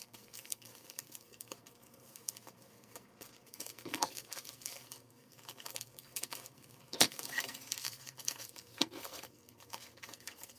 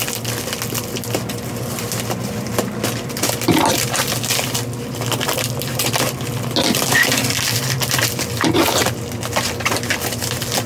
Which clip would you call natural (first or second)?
second